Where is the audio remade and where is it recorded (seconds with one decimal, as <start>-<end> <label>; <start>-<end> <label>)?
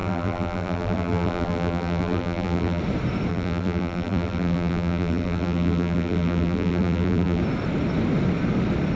0.0-2.8 remade; 2.8-3.3 recorded; 3.3-7.4 remade; 7.4-9.0 recorded